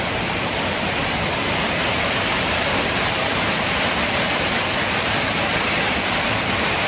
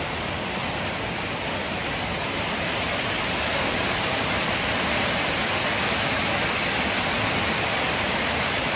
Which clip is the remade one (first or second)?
first